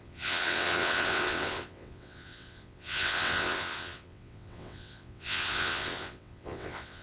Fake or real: fake